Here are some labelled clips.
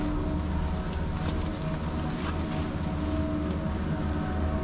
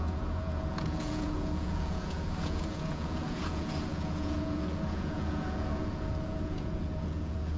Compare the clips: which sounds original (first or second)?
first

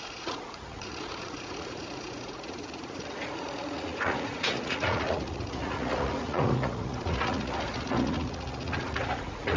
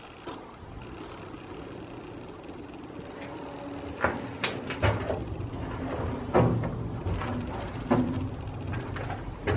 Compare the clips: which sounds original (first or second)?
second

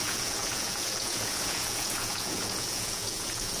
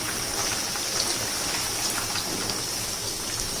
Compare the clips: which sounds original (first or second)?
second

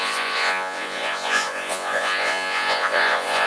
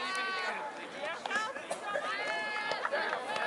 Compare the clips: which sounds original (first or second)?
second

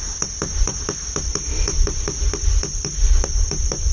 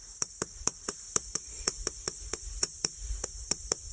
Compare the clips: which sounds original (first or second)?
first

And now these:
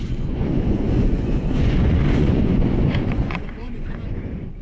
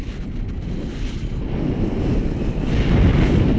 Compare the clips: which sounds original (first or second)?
second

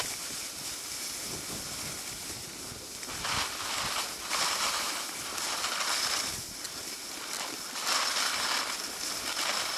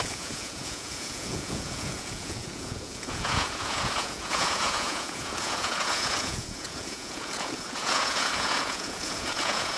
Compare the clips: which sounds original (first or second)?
first